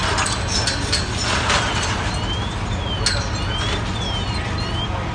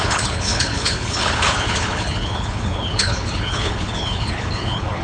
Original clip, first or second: first